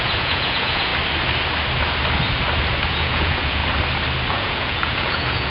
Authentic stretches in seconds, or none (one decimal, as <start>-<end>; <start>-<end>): 0.9-2.9; 3.6-4.3